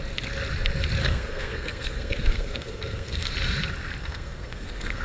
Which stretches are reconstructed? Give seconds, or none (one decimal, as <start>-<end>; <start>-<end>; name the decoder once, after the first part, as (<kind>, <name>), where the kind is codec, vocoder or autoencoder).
1.0-3.3 (codec, SNAC); 4.0-5.0